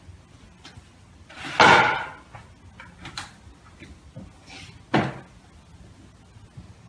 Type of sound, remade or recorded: recorded